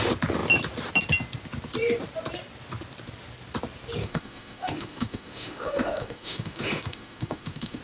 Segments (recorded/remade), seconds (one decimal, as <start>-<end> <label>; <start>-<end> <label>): 0.0-4.0 recorded; 4.0-7.8 remade